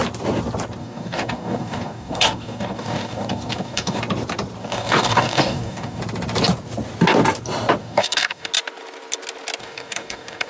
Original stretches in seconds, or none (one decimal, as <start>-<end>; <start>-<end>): 0.0-0.8; 4.0-4.6; 6.0-7.8; 8.5-9.6